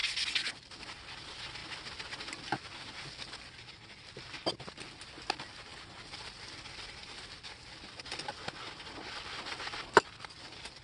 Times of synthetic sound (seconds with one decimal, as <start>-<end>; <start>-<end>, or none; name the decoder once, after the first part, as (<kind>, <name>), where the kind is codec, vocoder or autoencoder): none